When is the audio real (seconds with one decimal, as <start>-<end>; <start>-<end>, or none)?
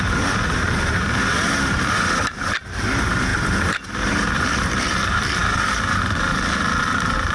none